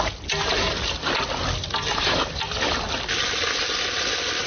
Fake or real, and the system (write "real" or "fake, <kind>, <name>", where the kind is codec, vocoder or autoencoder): real